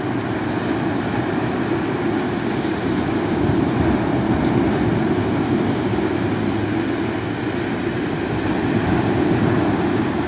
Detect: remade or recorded recorded